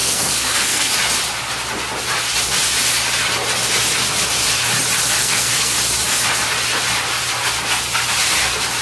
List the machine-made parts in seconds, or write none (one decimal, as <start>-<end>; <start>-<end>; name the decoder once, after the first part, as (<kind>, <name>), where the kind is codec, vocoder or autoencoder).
0.0-0.9 (codec, SNAC); 5.2-5.8